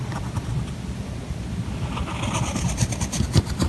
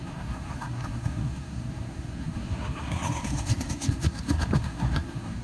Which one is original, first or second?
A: first